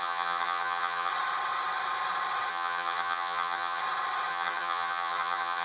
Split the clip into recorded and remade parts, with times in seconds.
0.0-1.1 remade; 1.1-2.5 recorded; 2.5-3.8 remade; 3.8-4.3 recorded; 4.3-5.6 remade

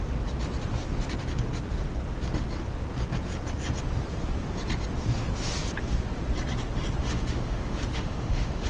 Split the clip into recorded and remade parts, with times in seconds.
0.0-7.0 recorded; 7.0-8.7 remade

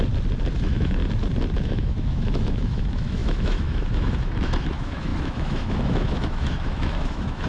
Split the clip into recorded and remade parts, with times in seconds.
0.0-0.5 recorded; 0.5-1.0 remade; 1.0-1.6 recorded; 1.6-7.5 remade

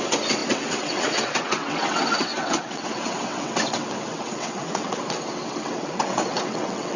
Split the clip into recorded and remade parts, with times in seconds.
0.0-7.0 remade